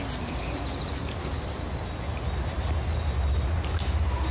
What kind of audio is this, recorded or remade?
recorded